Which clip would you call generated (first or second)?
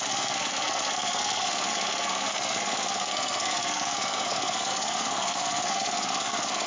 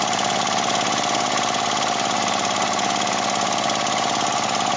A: first